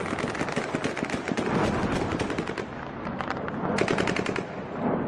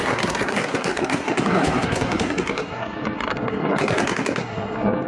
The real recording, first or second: first